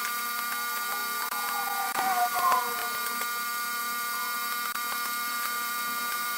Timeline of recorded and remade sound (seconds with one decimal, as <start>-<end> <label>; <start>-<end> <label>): 0.0-6.4 remade